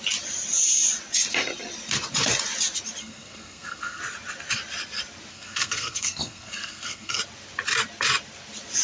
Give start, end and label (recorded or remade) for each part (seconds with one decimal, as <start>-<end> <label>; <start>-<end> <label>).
0.0-3.0 recorded; 3.0-4.0 remade; 4.0-5.3 recorded; 5.3-7.2 remade; 7.2-8.8 recorded